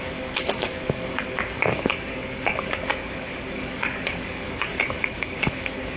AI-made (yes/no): yes